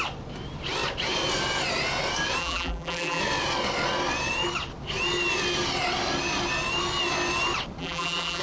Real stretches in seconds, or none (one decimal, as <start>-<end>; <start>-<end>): 0.0-2.4; 3.2-7.8